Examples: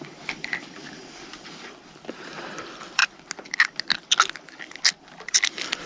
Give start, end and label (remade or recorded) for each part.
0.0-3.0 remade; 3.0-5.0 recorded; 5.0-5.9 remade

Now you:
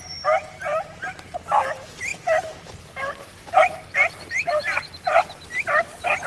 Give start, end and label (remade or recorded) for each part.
0.0-0.7 recorded; 0.7-1.2 remade; 1.2-2.1 recorded; 2.1-5.3 remade; 5.3-6.3 recorded

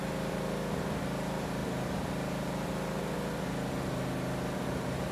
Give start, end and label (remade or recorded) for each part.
0.0-5.1 recorded

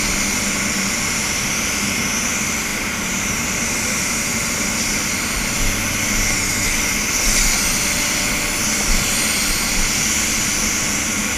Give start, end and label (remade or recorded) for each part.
0.0-2.7 recorded; 2.7-4.3 remade; 4.3-11.4 recorded

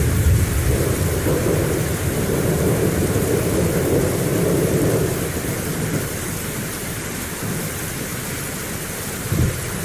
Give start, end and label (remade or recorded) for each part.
0.0-8.1 remade; 8.1-9.1 recorded; 9.1-9.8 remade